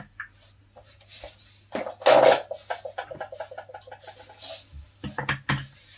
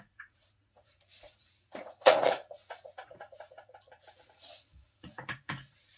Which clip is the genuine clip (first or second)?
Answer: first